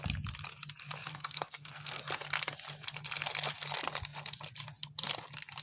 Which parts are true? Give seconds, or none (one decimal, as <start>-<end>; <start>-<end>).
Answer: 0.0-1.1; 2.0-5.6